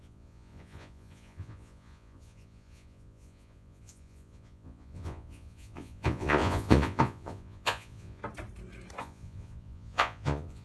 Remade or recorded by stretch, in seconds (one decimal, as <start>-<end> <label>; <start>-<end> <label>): 0.0-8.2 remade; 8.2-9.0 recorded; 9.0-10.6 remade